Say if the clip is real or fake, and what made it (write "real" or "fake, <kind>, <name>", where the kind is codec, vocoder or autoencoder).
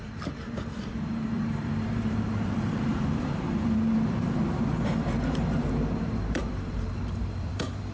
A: fake, vocoder, BigVGAN v2